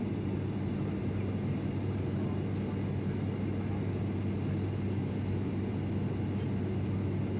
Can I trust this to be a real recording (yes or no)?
yes